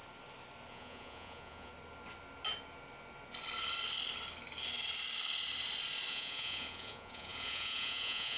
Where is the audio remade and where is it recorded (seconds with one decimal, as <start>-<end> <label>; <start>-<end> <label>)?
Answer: 0.0-0.7 recorded; 0.7-1.7 remade; 1.7-6.1 recorded; 6.1-8.4 remade